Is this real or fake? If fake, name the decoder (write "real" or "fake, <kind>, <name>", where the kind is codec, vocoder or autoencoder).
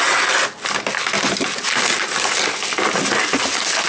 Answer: real